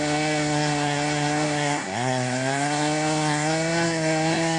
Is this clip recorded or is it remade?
remade